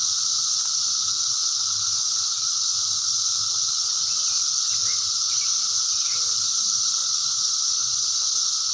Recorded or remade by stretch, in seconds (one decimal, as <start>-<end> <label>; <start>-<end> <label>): 0.0-7.0 recorded; 7.0-8.1 remade; 8.1-8.7 recorded